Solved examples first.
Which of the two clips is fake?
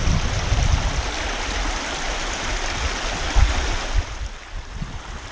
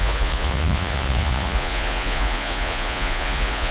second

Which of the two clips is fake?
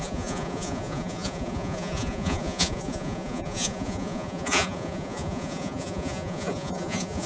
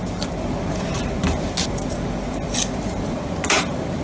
first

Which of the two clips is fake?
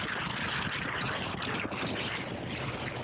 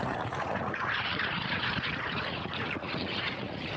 second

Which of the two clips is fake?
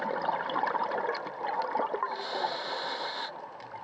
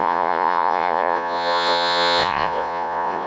second